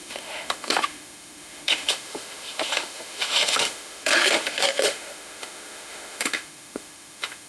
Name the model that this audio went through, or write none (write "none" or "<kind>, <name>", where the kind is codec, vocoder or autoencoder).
autoencoder, DAC-VAE